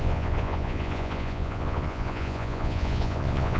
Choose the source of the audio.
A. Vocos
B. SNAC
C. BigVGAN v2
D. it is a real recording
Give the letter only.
A